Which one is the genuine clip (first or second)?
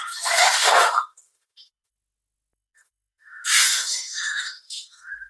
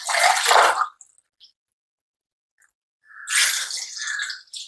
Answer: second